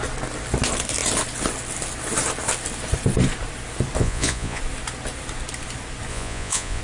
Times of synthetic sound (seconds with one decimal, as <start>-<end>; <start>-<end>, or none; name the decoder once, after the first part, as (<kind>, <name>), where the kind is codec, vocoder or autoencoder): 4.0-4.6 (vocoder, Vocos); 6.1-6.8